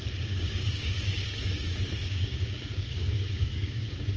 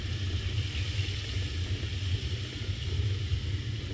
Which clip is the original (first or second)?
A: second